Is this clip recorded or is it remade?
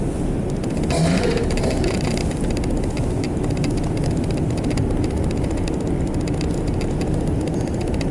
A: recorded